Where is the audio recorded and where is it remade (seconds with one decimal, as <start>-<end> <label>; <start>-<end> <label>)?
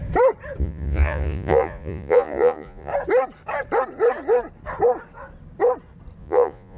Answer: 0.0-0.6 recorded; 0.6-2.9 remade; 2.9-6.2 recorded; 6.2-6.8 remade